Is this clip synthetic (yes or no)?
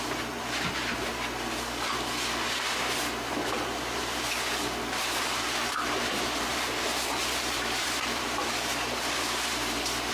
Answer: yes